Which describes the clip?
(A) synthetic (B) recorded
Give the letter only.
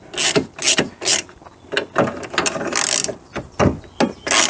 B